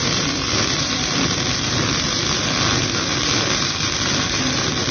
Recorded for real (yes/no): yes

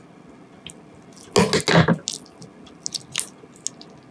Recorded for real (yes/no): yes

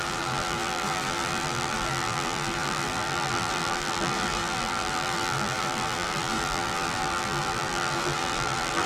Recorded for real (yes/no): no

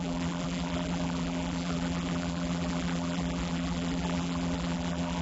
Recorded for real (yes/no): no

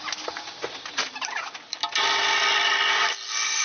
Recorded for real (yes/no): yes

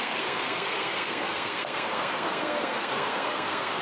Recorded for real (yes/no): no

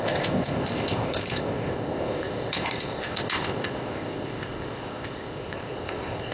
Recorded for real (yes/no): no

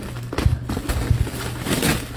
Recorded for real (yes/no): yes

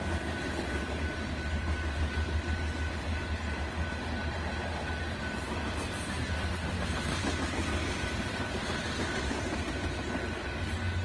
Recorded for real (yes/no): yes